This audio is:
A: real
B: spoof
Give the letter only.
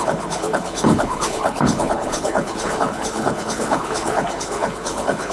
B